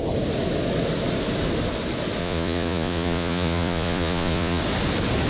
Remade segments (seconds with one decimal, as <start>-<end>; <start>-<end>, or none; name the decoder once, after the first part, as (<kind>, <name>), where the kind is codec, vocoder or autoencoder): 2.2-4.6 (vocoder, Vocos)